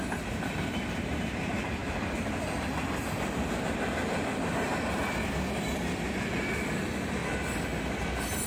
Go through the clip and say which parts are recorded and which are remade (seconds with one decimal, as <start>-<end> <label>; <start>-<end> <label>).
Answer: 0.0-1.8 remade; 1.8-3.0 recorded; 3.0-7.2 remade; 7.2-7.8 recorded; 7.8-8.5 remade